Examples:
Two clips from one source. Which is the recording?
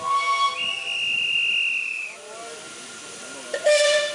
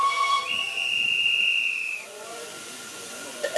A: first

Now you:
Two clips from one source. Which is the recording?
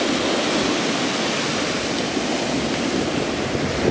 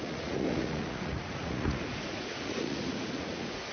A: first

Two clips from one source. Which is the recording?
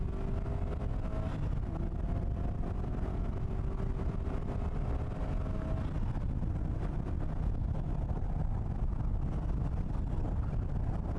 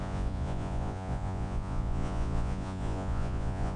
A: first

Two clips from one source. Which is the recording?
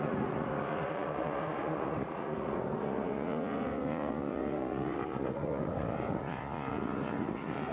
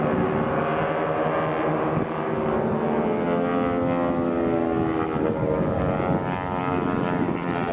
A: second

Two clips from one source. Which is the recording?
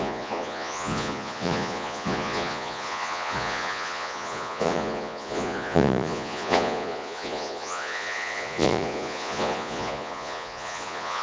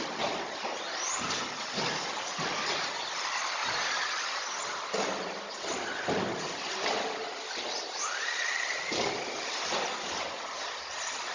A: second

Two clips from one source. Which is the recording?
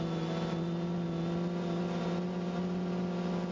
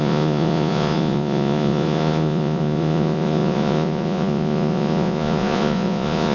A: first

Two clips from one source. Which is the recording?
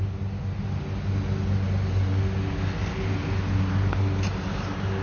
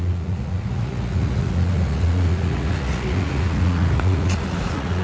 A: first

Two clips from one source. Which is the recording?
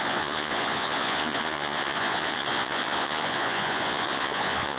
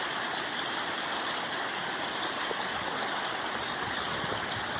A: second